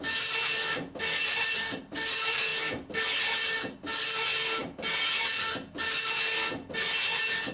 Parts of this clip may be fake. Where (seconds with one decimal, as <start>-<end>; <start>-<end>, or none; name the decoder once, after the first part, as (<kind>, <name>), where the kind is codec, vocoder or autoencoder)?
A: none